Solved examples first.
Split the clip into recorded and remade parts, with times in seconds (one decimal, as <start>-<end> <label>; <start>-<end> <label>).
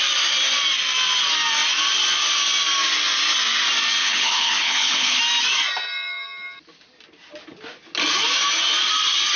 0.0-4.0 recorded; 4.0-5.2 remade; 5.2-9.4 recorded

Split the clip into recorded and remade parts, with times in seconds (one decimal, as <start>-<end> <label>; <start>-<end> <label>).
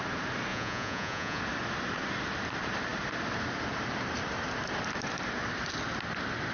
0.0-0.5 recorded; 0.5-1.4 remade; 1.4-6.5 recorded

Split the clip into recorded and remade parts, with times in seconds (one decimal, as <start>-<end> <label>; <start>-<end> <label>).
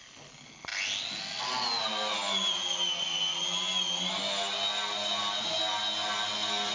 0.0-6.7 recorded